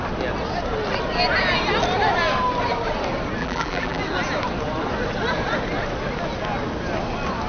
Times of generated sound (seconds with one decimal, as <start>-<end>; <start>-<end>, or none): 3.4-4.0